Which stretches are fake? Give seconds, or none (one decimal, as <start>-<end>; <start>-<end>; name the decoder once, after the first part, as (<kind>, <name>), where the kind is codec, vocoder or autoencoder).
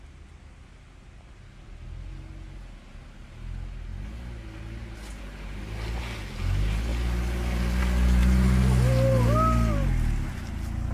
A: none